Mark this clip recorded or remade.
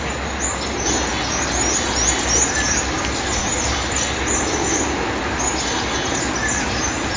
recorded